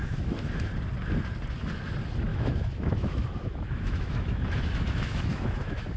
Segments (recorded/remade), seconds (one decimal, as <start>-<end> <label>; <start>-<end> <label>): 0.0-0.7 remade; 0.7-2.3 recorded; 2.3-6.0 remade